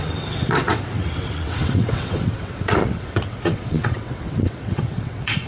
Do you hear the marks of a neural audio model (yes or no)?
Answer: yes